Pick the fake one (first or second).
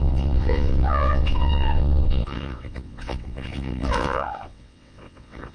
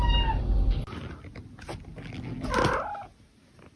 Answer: first